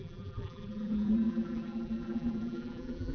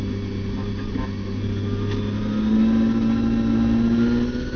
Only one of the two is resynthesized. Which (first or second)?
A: first